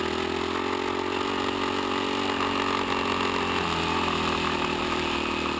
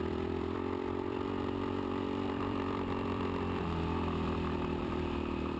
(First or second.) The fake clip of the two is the second